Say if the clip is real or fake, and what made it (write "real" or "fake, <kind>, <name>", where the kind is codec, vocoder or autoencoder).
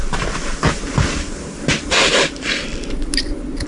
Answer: real